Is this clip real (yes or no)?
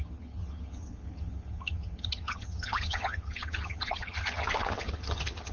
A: no